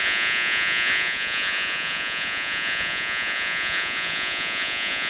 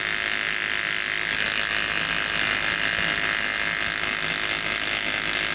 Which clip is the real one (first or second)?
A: second